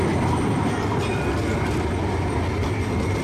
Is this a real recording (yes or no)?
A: yes